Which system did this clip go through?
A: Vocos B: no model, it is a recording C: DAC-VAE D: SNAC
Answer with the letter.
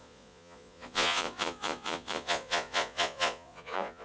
A